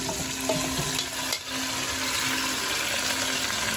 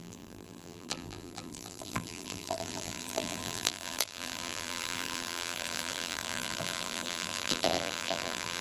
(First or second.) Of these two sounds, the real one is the first